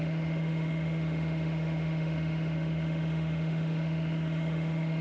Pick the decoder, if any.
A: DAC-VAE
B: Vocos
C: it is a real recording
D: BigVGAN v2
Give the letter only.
A